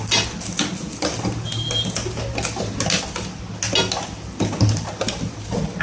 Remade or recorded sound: recorded